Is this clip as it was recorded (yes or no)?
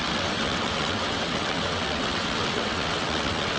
no